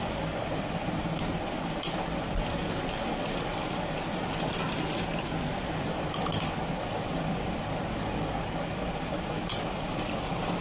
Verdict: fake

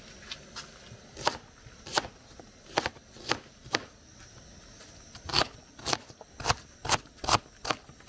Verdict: real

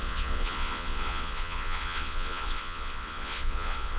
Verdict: fake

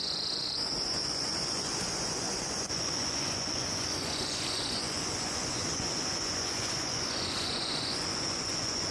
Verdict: fake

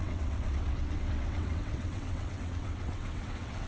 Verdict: fake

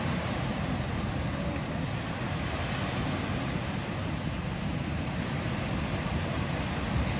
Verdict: real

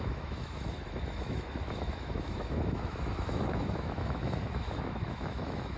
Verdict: fake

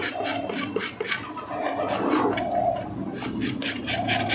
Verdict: real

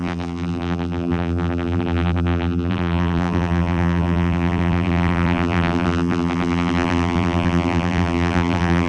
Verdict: fake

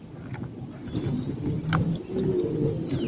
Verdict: real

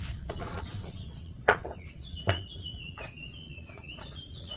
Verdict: fake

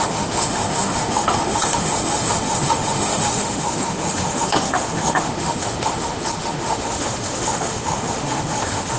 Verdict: fake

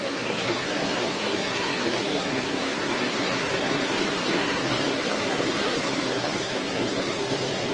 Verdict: fake